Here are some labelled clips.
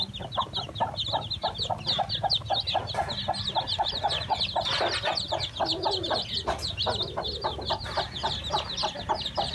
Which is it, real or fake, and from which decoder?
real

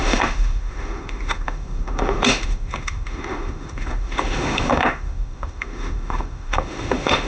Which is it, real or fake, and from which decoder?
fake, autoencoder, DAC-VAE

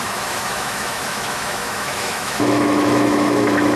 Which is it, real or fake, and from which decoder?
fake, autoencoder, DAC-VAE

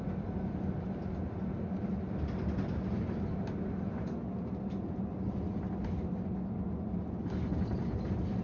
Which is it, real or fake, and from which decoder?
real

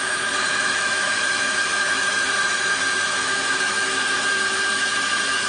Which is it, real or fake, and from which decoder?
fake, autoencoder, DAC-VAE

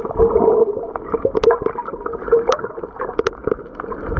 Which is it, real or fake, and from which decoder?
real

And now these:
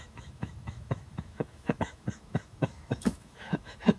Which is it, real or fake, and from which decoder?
fake, autoencoder, DAC-VAE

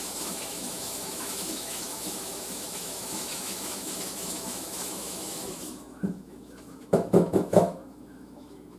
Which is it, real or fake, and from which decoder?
fake, autoencoder, DAC-VAE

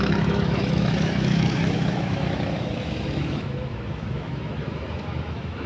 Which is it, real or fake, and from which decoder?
fake, autoencoder, DAC-VAE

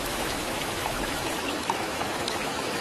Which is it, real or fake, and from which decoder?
fake, autoencoder, DAC-VAE